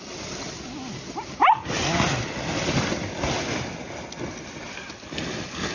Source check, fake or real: real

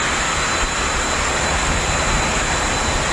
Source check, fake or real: real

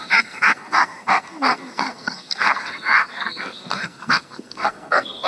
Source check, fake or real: fake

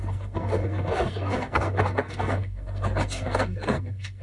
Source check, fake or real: fake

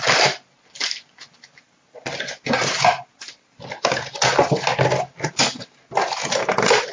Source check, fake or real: real